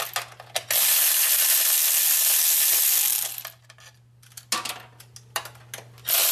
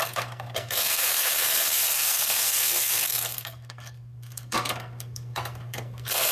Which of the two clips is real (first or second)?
first